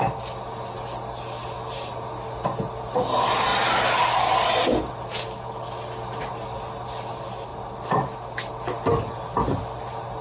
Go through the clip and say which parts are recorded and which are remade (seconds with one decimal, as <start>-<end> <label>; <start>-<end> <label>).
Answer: 0.0-10.2 recorded